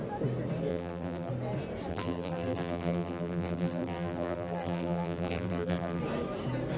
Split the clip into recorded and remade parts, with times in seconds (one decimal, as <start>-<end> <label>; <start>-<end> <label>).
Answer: 0.0-0.7 recorded; 0.7-1.3 remade; 1.3-1.9 recorded; 1.9-6.0 remade; 6.0-6.8 recorded